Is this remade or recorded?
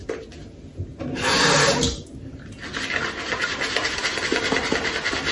recorded